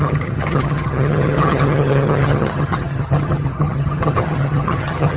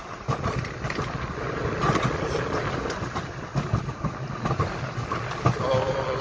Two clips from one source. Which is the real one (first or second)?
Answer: second